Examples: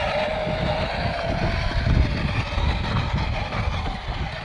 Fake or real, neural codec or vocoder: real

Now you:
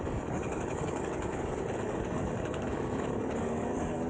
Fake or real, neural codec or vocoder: fake, codec, DAC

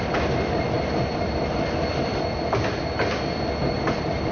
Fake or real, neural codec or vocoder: real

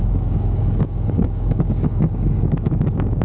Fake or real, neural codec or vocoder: fake, codec, DAC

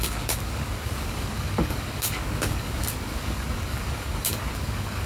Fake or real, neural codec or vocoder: fake, codec, DAC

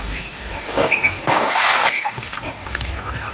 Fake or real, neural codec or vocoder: fake, codec, DAC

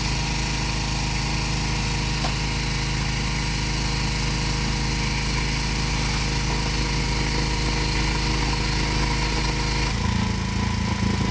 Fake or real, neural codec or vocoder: real